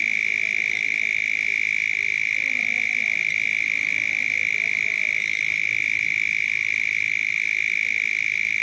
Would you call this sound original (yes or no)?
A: no